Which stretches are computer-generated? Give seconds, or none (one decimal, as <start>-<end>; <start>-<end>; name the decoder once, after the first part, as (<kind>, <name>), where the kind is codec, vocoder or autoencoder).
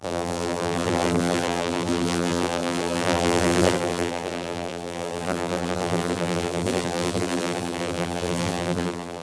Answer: 0.0-9.2 (vocoder, BigVGAN v2)